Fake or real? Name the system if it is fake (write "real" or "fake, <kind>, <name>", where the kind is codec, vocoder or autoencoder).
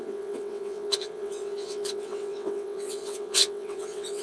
fake, vocoder, WaveNeXt